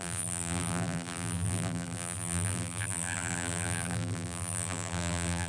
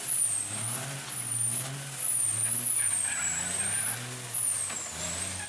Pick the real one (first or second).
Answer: second